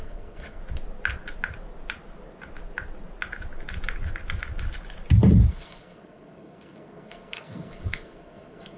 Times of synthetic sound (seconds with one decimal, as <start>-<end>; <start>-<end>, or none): 0.0-0.6; 5.5-8.8